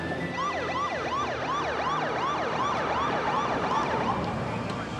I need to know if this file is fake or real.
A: real